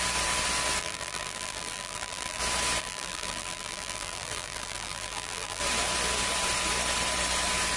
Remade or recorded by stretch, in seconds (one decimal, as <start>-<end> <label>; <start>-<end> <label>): 0.0-0.8 recorded; 0.8-2.4 remade; 2.4-2.8 recorded; 2.8-5.6 remade; 5.6-7.8 recorded